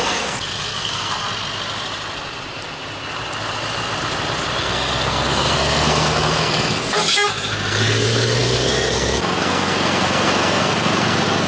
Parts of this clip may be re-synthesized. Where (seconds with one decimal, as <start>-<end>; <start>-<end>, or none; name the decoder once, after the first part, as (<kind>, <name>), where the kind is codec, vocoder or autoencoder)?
0.0-1.2 (codec, SNAC); 4.6-11.5